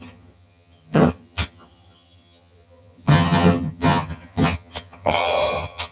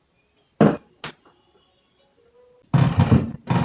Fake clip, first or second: first